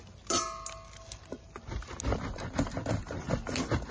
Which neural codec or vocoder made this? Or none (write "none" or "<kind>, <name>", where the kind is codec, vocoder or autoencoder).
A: none